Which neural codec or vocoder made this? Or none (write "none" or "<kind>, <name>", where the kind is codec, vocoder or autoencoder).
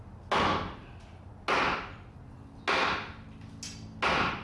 none